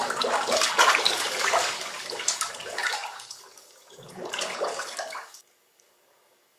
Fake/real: fake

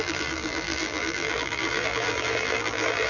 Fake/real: fake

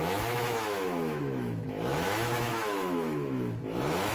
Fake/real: fake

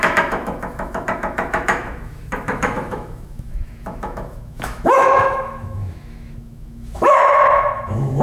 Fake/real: fake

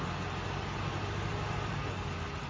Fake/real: real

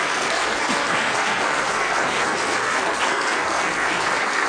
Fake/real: fake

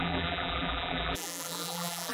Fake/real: fake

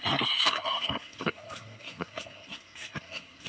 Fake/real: fake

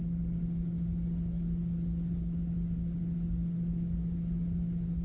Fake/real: real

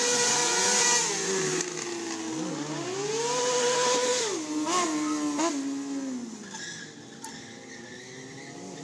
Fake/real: real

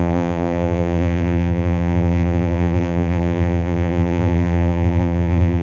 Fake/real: fake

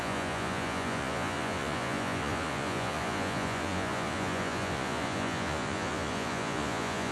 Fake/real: fake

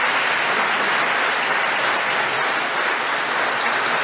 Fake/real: real